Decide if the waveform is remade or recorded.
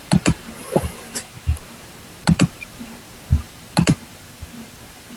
remade